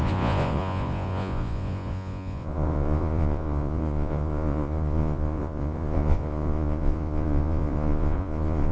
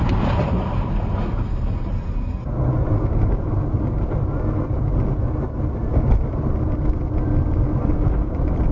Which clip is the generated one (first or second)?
first